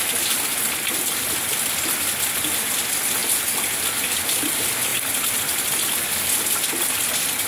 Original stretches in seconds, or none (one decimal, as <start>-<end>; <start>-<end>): 0.0-3.2; 4.0-7.5